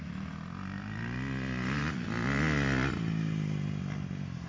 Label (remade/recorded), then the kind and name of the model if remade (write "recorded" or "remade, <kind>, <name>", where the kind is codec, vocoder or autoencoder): recorded